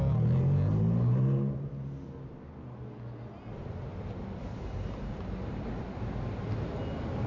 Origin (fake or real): real